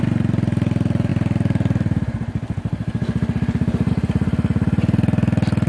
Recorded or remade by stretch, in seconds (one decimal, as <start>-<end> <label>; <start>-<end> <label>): 0.0-5.7 recorded